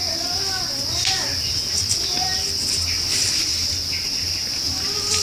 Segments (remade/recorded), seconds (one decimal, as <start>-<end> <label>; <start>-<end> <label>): 0.0-5.2 recorded